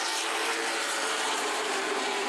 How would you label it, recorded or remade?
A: remade